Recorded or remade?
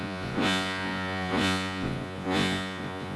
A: remade